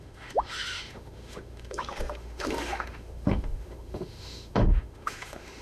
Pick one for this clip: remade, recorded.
remade